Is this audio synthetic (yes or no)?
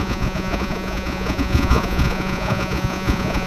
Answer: yes